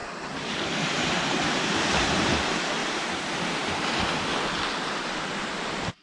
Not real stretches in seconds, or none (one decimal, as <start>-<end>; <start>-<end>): 0.0-2.1; 2.8-4.0